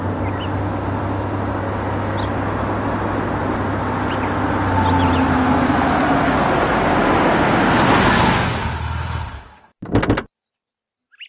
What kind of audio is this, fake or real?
real